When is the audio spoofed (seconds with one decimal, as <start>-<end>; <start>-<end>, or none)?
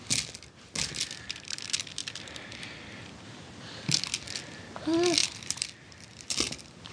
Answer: 2.0-3.6; 5.2-6.9